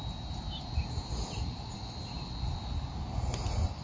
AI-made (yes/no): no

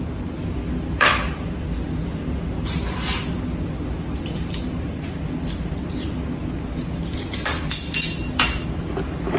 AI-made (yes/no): no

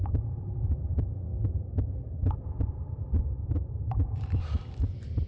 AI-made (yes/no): yes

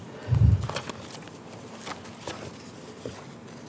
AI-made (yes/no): no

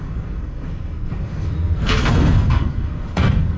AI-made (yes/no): yes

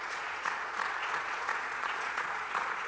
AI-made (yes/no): yes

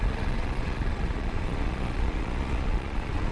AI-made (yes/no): yes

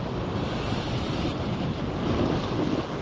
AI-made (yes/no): no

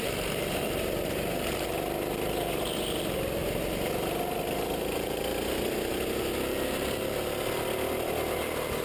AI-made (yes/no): no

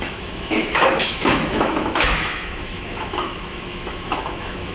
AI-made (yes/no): yes